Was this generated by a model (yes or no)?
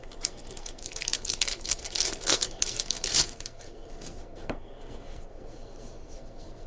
yes